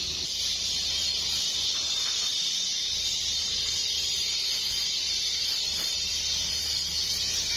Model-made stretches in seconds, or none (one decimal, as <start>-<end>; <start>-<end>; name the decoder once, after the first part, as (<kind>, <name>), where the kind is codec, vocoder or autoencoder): none